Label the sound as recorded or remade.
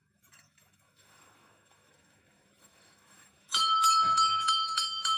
remade